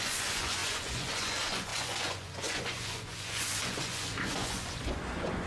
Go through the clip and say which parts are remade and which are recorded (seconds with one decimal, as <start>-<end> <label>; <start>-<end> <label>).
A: 0.0-5.5 remade